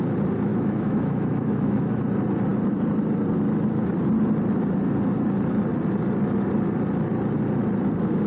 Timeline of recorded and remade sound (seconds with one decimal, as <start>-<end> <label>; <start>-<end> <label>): 0.0-0.5 recorded; 0.5-1.9 remade; 1.9-8.3 recorded

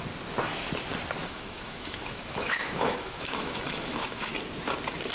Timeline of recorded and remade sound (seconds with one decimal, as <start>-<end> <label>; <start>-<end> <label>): 0.0-1.2 recorded; 1.2-4.3 remade; 4.3-5.1 recorded

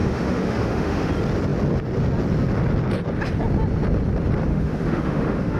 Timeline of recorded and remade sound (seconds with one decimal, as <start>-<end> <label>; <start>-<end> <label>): 0.0-1.1 remade; 1.1-4.5 recorded; 4.5-5.6 remade